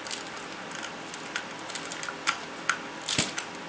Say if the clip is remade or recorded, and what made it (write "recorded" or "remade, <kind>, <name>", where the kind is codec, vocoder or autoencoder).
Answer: recorded